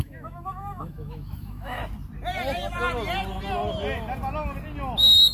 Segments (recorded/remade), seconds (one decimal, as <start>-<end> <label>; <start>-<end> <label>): 0.0-1.8 remade; 1.8-5.3 recorded